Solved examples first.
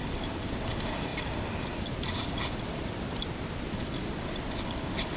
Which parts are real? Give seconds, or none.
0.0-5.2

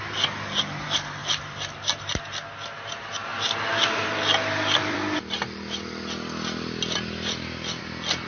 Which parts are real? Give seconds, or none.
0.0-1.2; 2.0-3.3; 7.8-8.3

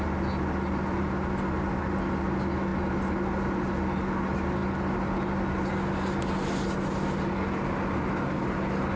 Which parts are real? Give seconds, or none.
0.0-9.0